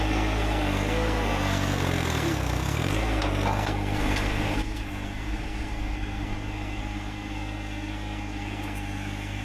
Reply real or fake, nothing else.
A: fake